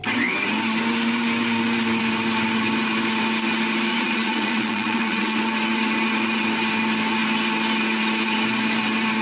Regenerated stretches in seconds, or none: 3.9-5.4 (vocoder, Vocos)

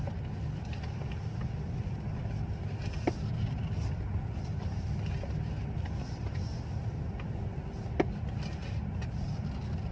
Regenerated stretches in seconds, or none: none

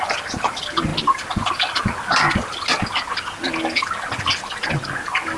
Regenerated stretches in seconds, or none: none

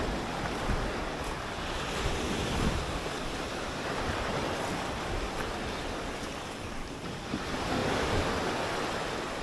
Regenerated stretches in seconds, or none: none

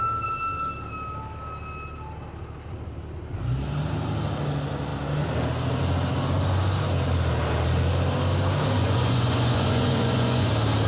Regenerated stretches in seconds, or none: 8.8-10.5 (vocoder, Vocos)

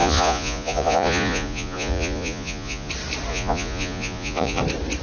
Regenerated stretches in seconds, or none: 0.0-2.9 (vocoder, Vocos); 3.3-4.6

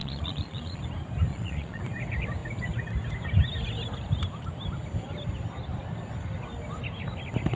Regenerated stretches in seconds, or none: 0.0-0.8 (vocoder, Vocos); 1.3-1.8

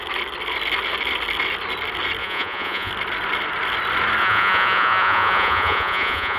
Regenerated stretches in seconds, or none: 2.2-2.9 (vocoder, Vocos); 4.2-6.4